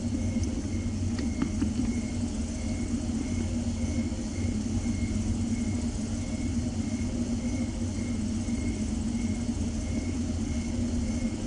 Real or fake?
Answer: real